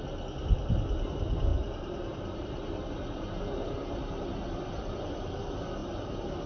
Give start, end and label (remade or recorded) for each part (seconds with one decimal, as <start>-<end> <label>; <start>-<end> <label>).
0.0-6.5 recorded